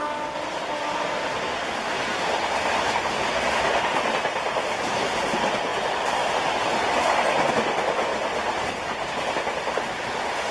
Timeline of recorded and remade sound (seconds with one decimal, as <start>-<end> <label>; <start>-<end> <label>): 0.0-10.5 recorded